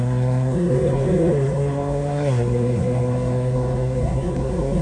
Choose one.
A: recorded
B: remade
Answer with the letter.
B